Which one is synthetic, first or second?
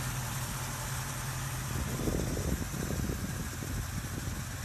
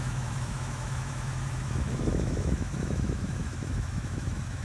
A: second